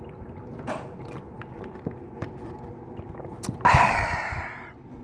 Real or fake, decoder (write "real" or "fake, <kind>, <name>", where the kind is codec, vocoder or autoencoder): real